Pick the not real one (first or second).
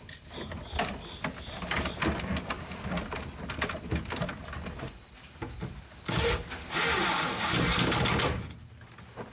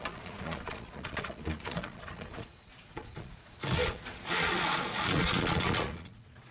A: second